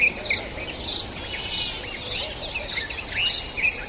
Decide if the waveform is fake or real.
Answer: real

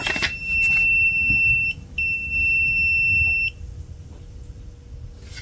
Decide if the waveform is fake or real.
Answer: real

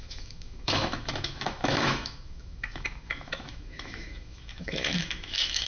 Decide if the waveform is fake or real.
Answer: fake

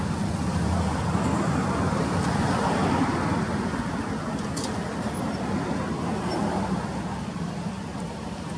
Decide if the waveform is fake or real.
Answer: real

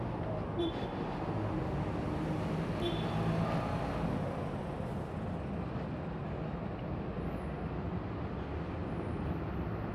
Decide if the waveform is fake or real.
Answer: real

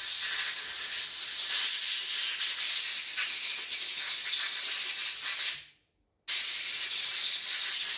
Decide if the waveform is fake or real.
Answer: real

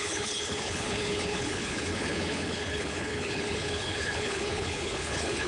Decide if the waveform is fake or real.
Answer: fake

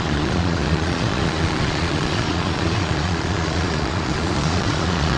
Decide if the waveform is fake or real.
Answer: fake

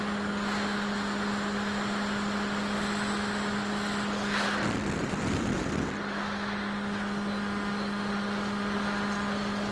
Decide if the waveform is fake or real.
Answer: real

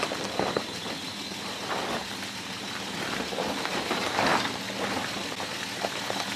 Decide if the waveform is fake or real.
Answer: real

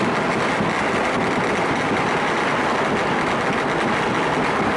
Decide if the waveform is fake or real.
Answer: real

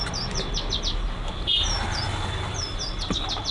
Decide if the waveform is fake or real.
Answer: real